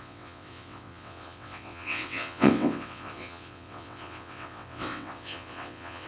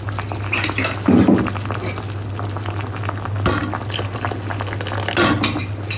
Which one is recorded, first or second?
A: second